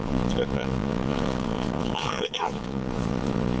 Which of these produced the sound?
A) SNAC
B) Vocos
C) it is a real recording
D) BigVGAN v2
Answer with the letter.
B